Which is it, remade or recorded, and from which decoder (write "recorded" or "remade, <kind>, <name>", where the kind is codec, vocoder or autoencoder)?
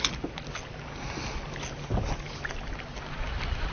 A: recorded